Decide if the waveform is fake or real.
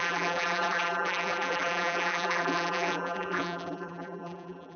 fake